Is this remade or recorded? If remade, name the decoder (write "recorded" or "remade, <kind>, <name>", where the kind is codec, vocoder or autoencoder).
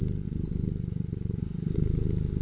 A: recorded